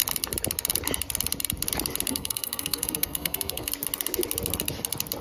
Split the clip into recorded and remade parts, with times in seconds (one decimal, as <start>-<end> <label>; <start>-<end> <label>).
0.0-2.1 recorded; 2.1-3.7 remade; 3.7-5.2 recorded